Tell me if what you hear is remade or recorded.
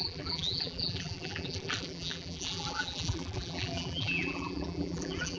remade